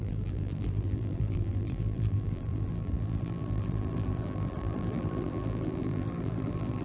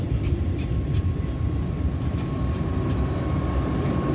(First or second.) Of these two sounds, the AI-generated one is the first